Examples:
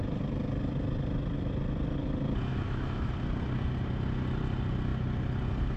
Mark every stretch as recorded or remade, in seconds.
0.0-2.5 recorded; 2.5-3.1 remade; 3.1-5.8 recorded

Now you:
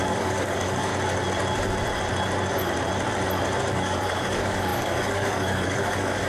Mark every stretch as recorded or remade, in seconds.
0.0-0.9 remade; 0.9-3.7 recorded; 3.7-6.3 remade

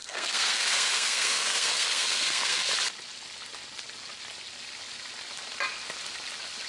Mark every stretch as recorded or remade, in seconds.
0.0-2.7 remade; 2.7-6.7 recorded